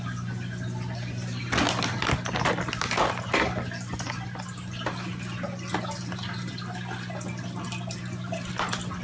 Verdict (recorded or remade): recorded